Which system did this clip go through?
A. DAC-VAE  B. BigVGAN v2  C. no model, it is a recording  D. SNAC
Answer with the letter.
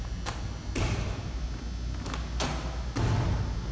C